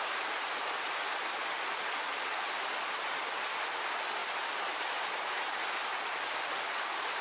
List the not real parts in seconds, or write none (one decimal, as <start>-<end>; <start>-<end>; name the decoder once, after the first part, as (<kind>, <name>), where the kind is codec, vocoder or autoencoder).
0.0-1.1 (vocoder, BigVGAN v2); 4.2-7.2

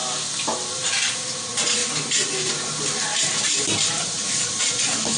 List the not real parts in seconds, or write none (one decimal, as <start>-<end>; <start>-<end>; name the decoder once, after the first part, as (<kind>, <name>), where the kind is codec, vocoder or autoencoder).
3.1-4.7 (vocoder, BigVGAN v2)

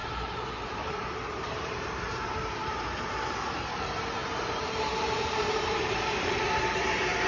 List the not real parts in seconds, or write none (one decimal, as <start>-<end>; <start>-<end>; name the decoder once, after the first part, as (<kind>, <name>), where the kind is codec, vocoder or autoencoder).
0.0-2.2 (vocoder, BigVGAN v2); 4.2-7.3

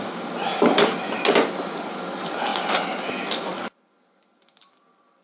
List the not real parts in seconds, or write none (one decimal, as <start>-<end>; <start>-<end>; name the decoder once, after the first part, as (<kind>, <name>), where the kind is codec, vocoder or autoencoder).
0.0-3.5 (vocoder, BigVGAN v2); 4.6-5.2

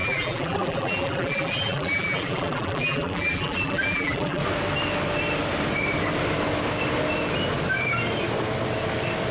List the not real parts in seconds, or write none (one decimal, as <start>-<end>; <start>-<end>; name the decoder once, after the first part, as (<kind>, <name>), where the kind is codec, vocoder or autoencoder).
0.0-4.4 (vocoder, BigVGAN v2)

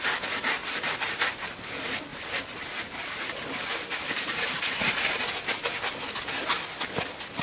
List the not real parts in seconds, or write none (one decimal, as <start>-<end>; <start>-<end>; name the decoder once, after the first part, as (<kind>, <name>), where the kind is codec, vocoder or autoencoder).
0.6-1.7 (vocoder, BigVGAN v2); 2.1-5.2